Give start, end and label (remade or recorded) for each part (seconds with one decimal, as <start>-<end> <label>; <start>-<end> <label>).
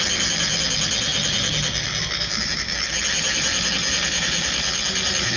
0.0-5.4 recorded